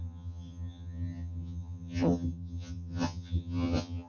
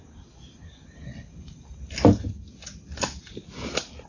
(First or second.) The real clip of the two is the second